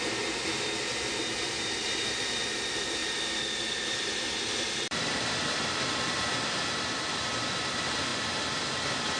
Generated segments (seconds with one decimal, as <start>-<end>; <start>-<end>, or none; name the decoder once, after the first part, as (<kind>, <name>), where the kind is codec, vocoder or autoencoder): 0.0-3.0 (vocoder, BigVGAN v2); 3.6-9.2